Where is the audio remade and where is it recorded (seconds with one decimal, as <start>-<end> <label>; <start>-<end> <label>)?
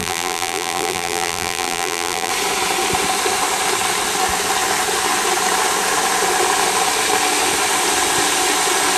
0.0-2.3 remade; 2.3-9.0 recorded